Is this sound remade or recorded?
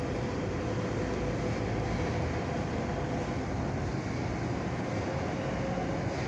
recorded